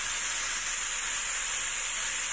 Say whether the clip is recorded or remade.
recorded